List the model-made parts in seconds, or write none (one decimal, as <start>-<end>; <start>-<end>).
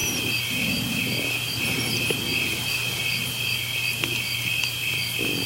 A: none